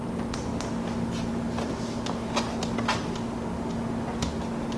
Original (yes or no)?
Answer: yes